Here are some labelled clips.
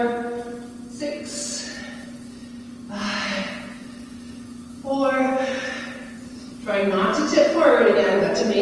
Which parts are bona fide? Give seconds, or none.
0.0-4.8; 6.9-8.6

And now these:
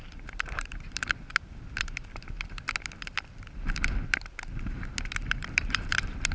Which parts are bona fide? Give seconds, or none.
1.3-5.1

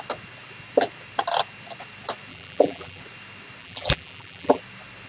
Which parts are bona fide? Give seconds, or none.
0.0-2.3; 3.0-3.6; 4.6-5.1

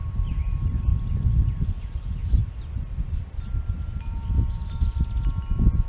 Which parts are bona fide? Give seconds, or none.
0.9-1.7; 2.2-5.9

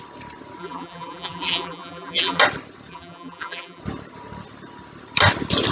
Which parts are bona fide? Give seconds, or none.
0.0-0.6; 2.4-2.9; 3.8-5.7

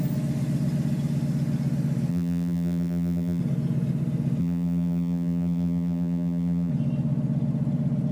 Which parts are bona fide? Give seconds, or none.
0.0-2.1; 3.4-4.4; 6.7-8.1

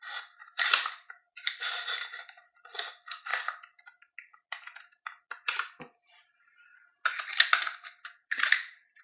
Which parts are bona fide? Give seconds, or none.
0.0-0.4; 1.0-8.2

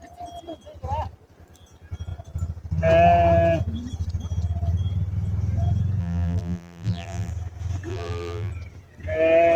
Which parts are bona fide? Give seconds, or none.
0.0-6.0; 7.3-7.9; 8.5-9.6